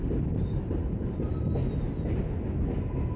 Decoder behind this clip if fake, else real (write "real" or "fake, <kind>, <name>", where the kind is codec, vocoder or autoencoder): real